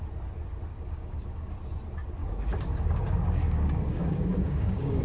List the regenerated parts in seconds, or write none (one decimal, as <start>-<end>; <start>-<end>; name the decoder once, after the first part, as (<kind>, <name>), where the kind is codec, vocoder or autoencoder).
0.7-1.5 (codec, DAC); 2.2-5.0